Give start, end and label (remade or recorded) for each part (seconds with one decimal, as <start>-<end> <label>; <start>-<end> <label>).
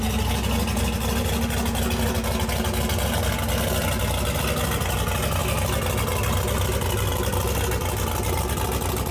0.0-9.1 recorded